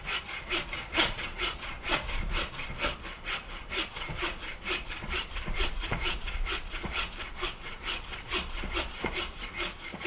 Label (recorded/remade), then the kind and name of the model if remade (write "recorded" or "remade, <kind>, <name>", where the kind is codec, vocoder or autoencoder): remade, vocoder, Vocos